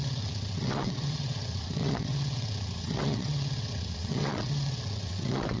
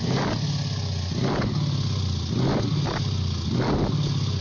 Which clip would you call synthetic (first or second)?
first